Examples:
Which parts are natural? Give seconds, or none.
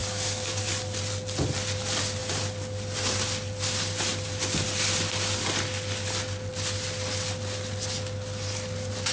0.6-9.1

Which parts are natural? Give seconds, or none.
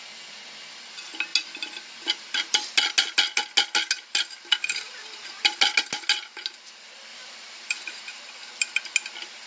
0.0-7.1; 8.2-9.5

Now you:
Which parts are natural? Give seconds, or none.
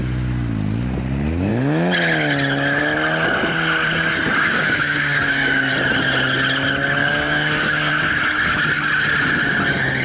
0.0-4.4; 5.7-7.0; 7.9-10.0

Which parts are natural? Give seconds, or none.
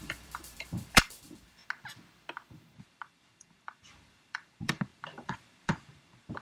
1.6-2.8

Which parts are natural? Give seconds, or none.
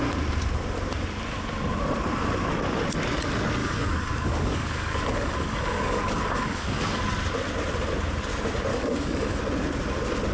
0.0-3.6; 7.0-8.7; 9.4-10.3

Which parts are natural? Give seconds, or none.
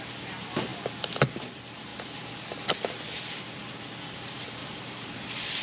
0.0-4.6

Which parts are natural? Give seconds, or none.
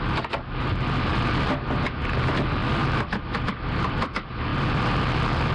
0.0-5.5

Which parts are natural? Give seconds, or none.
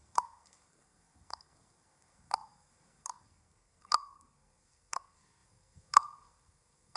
none